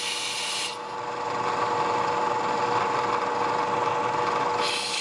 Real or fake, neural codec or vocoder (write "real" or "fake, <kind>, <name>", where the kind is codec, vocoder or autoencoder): real